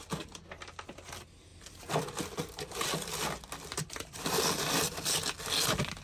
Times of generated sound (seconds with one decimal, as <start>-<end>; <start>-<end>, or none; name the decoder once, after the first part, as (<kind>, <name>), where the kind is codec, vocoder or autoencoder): none